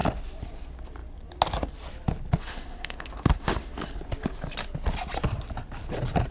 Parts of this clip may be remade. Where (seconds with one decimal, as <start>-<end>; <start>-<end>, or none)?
2.4-3.7